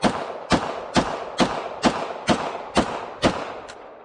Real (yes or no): yes